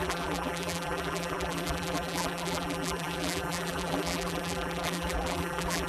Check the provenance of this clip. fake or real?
fake